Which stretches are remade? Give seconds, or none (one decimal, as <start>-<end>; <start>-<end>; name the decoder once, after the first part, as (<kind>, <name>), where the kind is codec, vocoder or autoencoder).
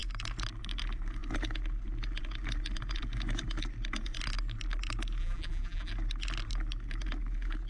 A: 5.2-5.9 (vocoder, BigVGAN v2)